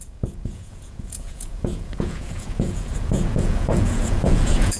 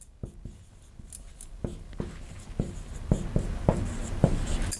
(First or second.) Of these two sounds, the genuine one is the second